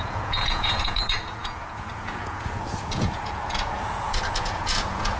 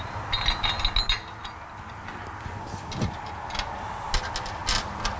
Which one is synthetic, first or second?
first